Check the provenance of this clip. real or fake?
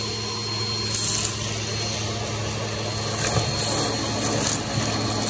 real